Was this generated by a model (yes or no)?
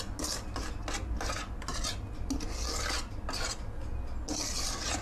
no